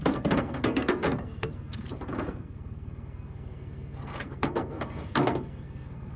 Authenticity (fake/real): fake